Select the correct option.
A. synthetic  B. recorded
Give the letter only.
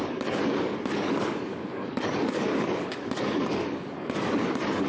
A